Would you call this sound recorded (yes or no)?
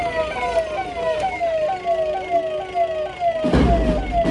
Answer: yes